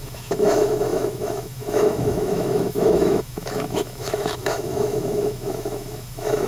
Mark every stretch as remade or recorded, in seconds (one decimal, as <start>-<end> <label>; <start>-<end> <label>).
0.0-6.5 remade